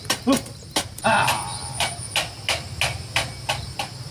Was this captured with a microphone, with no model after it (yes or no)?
yes